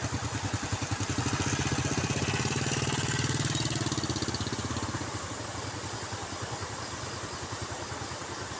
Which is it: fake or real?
real